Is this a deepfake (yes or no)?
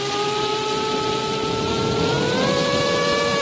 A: no